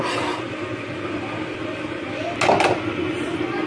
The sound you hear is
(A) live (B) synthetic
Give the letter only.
A